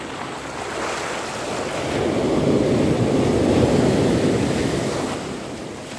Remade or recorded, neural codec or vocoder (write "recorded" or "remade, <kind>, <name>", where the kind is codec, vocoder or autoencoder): recorded